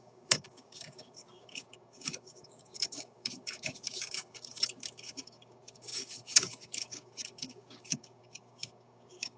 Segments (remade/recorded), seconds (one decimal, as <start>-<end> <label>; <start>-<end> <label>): 0.0-9.4 remade